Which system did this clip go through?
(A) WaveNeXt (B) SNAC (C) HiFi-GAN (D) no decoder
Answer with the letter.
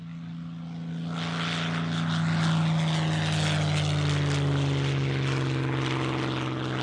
D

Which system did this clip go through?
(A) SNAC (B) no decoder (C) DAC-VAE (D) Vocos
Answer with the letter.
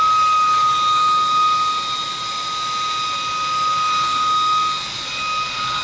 B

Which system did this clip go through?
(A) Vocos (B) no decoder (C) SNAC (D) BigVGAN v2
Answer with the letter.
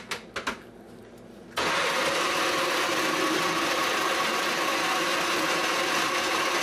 B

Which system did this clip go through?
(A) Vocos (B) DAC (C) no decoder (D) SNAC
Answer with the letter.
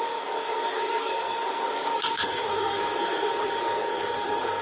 D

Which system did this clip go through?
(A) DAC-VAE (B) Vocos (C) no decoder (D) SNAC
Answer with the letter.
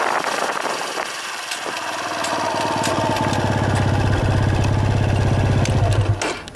C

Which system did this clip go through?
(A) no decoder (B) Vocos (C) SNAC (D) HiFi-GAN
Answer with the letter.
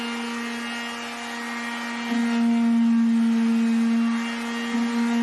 A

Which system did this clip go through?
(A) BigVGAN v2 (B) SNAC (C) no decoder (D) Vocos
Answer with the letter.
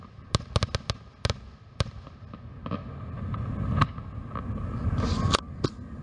C